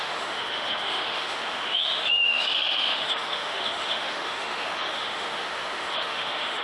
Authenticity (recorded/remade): remade